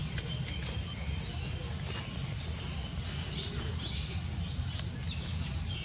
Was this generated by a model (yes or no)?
no